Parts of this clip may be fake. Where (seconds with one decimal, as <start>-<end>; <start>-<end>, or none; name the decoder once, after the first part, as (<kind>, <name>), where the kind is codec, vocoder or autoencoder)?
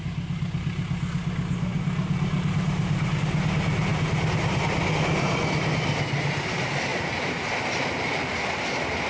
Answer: none